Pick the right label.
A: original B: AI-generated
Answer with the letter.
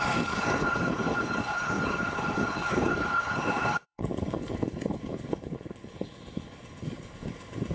B